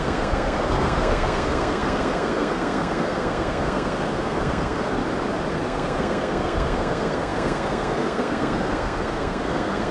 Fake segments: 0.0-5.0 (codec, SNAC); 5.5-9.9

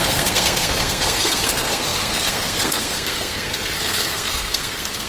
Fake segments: 0.0-5.1 (codec, SNAC)